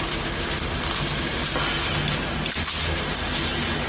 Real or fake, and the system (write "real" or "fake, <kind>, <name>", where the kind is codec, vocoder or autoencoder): real